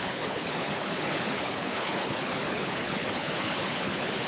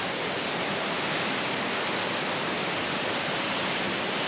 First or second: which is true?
second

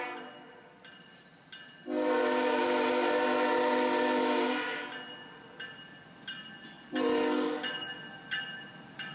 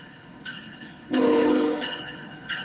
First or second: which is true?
first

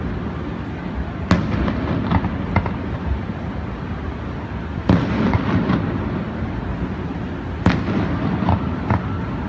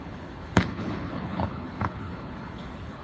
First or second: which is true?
first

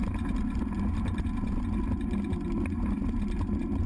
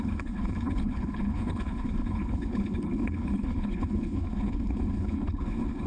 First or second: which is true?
first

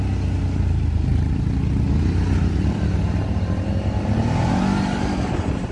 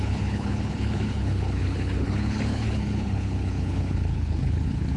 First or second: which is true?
first